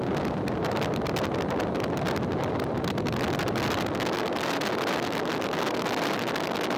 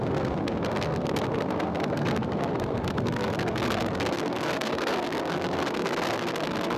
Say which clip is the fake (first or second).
second